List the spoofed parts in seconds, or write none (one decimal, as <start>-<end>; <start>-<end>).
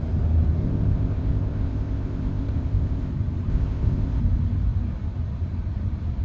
0.6-3.1; 3.5-4.2